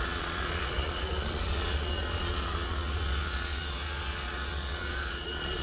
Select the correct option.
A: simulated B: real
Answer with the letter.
A